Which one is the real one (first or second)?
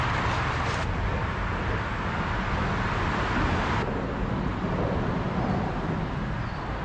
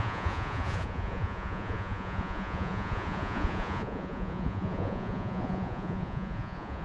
first